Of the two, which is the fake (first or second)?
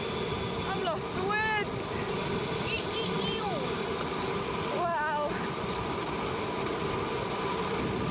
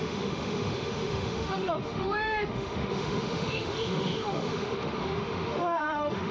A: second